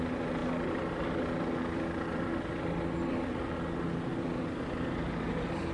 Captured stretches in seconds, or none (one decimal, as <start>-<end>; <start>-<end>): 0.0-5.7

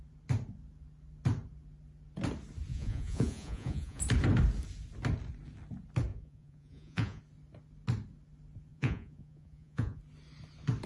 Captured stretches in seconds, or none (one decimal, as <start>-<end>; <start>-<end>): 0.0-2.7; 4.0-6.1; 7.2-8.7; 10.0-10.9

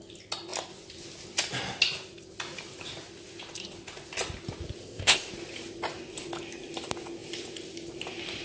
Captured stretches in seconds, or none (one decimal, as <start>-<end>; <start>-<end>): 0.0-4.8; 5.3-8.4

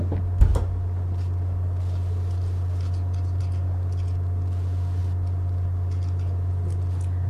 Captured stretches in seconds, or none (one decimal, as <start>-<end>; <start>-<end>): 0.0-7.3

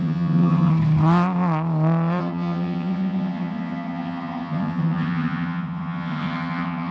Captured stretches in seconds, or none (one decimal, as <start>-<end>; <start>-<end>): 0.7-2.2

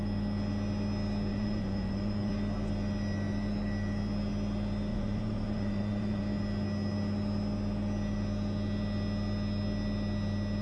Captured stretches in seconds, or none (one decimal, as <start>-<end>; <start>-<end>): 0.0-1.3; 2.3-4.9; 6.2-10.6

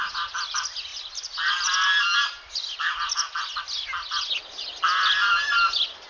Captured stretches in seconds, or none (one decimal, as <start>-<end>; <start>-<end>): 0.0-6.1

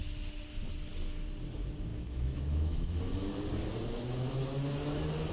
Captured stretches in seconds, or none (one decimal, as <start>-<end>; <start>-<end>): 0.0-1.9; 3.0-5.3